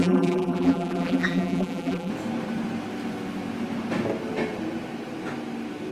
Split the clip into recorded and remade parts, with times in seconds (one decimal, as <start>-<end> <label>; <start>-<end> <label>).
0.0-2.1 remade; 2.1-5.9 recorded